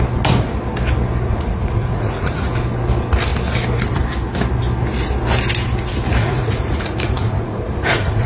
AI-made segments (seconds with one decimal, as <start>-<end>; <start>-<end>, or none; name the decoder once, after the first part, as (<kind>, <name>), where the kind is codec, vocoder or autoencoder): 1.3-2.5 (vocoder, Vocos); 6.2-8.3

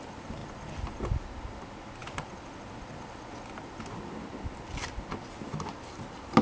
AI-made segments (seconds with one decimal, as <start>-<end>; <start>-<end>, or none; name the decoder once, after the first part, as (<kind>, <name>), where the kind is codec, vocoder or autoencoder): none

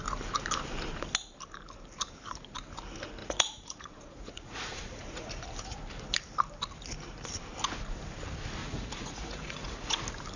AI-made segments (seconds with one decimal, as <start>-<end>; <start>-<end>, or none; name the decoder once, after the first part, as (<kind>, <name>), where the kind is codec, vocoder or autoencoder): 3.2-5.3 (vocoder, Vocos); 8.6-10.0